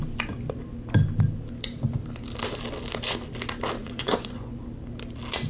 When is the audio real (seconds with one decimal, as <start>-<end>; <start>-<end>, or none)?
0.0-3.8; 4.6-5.5